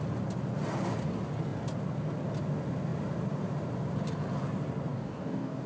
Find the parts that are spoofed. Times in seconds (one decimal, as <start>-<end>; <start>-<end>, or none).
4.9-5.7